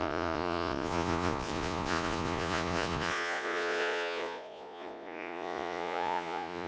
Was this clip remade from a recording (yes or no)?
yes